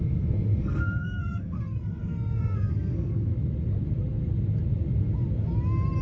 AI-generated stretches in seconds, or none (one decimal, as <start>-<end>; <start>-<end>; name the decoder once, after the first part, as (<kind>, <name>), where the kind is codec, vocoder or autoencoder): 0.0-3.3 (codec, SNAC)